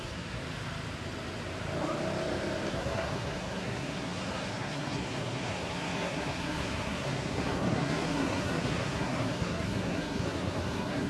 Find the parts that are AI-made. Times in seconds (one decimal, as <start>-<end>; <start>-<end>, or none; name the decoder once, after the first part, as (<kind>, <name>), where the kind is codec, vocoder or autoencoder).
0.0-0.4 (codec, SNAC); 2.7-11.1